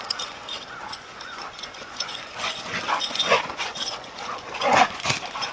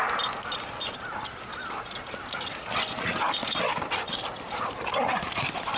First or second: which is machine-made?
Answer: first